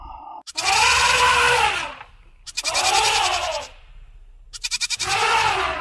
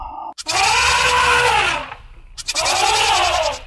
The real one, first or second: second